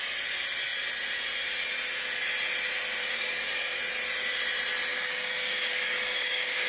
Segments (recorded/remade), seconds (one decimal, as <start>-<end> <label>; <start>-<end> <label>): 0.0-3.0 recorded; 3.0-3.8 remade; 3.8-4.9 recorded; 4.9-6.7 remade